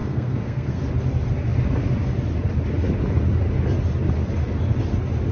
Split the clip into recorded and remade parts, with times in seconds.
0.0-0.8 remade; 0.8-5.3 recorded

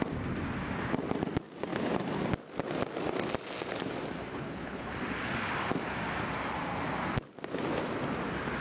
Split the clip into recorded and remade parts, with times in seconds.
0.0-4.3 recorded; 4.3-4.9 remade; 4.9-8.6 recorded

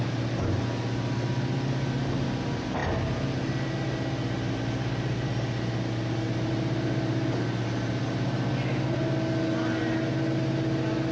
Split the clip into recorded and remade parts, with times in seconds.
0.0-11.1 recorded

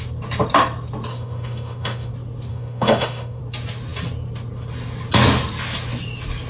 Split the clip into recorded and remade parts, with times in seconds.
0.0-1.1 recorded; 1.1-2.1 remade; 2.1-2.5 recorded; 2.5-3.4 remade; 3.4-6.5 recorded